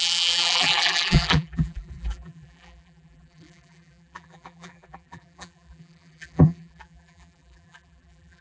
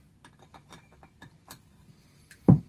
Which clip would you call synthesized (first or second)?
first